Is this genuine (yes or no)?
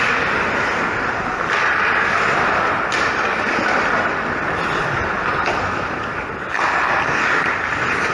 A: yes